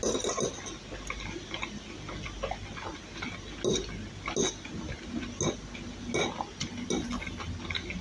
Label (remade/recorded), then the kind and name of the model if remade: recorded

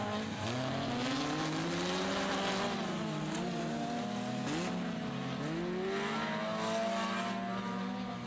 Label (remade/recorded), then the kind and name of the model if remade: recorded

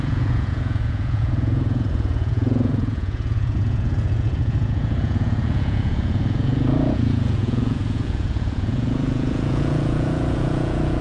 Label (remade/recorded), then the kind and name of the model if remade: remade, vocoder, Vocos